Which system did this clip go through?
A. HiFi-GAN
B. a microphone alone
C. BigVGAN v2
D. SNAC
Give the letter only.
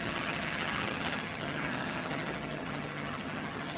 A